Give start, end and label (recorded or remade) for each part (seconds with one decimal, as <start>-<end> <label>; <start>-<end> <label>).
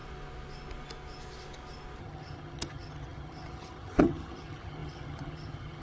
0.0-2.0 recorded; 2.0-5.8 remade